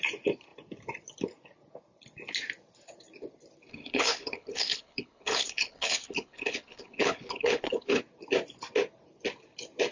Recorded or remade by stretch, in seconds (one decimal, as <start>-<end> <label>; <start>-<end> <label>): 0.0-3.7 recorded; 3.7-8.0 remade; 8.0-9.9 recorded